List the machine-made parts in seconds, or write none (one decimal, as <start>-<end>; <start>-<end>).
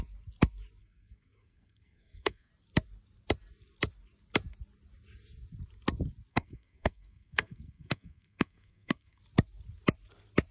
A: 0.8-2.5; 6.3-9.2